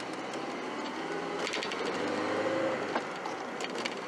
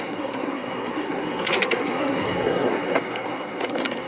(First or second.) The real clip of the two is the first